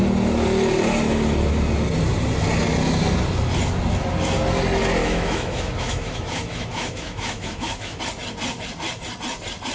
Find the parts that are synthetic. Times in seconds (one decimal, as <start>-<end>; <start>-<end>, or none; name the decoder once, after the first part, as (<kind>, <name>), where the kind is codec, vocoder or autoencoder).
5.0-8.0 (autoencoder, DAC-VAE)